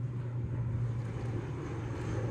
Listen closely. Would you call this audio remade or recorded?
recorded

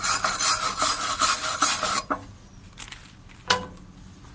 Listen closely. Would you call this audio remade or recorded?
recorded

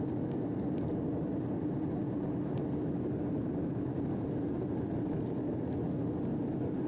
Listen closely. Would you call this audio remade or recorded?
recorded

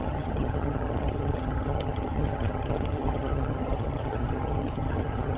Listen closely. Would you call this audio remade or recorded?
remade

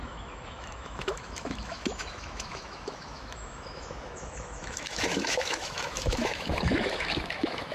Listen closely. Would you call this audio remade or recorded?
remade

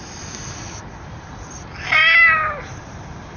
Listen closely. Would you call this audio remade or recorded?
recorded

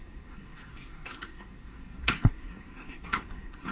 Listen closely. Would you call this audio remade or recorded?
remade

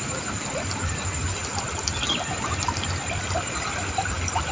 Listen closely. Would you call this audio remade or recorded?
recorded